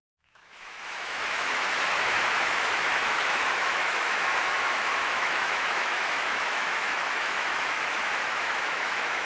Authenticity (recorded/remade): remade